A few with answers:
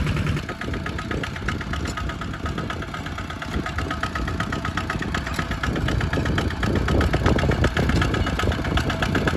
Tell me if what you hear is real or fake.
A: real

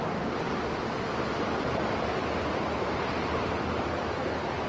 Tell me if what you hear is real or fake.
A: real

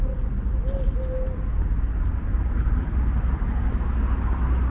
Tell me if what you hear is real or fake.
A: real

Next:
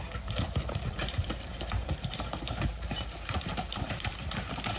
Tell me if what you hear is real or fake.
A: fake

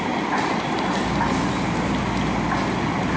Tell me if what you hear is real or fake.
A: real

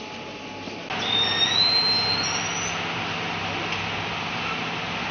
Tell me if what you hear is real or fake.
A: real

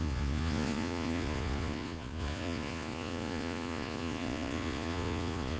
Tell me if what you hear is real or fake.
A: fake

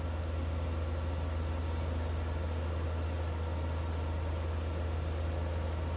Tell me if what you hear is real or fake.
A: real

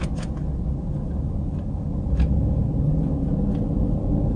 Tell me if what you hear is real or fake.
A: real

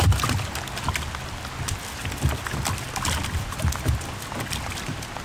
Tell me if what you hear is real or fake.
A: real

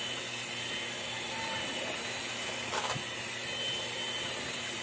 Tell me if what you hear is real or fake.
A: real